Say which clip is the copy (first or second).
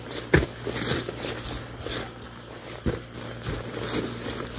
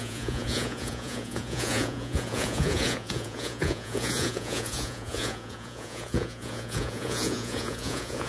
second